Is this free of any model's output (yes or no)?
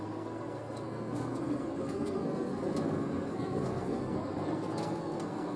no